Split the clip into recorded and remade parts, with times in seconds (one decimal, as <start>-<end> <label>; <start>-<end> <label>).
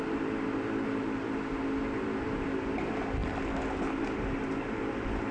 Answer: 0.0-5.3 recorded